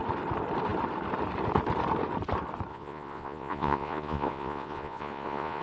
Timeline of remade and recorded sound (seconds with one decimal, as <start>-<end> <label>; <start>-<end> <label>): 0.0-2.7 recorded; 2.7-5.6 remade